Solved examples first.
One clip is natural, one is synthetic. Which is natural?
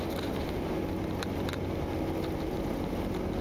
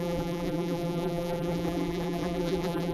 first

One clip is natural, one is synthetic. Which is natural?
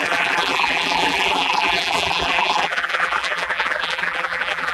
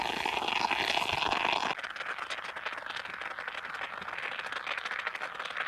second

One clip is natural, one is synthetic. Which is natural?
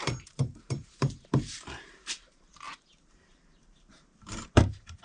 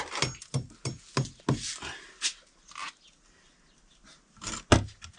second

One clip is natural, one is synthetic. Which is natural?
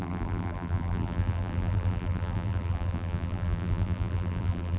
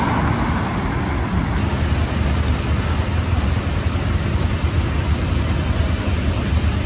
second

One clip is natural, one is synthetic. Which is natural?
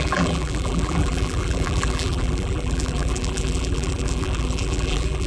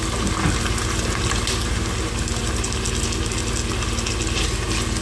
second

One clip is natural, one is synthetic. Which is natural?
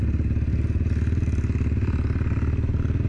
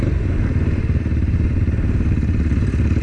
first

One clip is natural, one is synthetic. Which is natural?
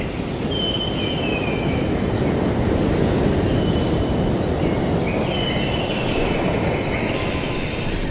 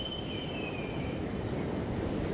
first